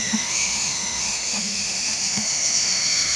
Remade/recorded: remade